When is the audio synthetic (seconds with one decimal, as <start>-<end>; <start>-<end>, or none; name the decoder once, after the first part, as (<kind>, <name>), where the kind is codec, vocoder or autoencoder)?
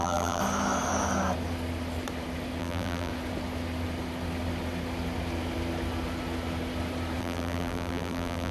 0.0-0.4 (vocoder, BigVGAN v2); 2.6-3.1; 7.2-8.5